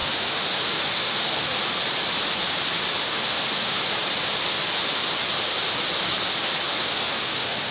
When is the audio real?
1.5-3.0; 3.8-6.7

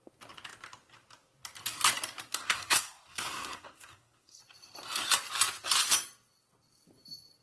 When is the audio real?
0.0-2.3; 4.4-7.4

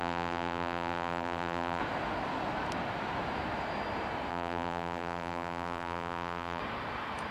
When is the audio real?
1.8-4.3; 6.6-7.3

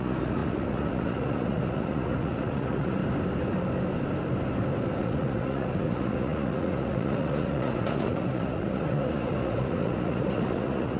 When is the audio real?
3.0-5.0

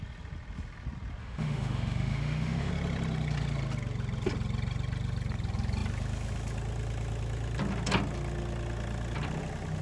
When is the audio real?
0.0-1.2; 2.7-9.8

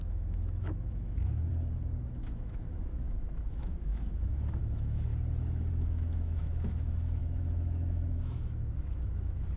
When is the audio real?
1.5-2.0; 5.1-5.7

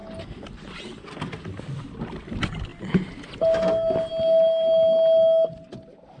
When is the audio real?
0.0-6.2